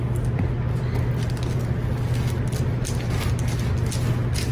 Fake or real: real